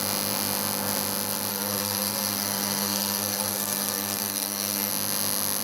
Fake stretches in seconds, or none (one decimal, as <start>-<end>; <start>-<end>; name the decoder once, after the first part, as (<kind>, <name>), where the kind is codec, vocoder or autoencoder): 1.5-4.9 (codec, SNAC)